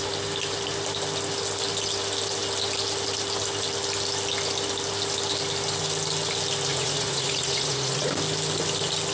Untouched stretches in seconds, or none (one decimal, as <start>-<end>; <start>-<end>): 0.0-6.7; 8.1-9.1